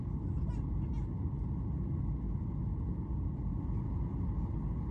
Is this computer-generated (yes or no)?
no